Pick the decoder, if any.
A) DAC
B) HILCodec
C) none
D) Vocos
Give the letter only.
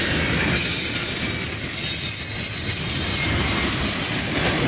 C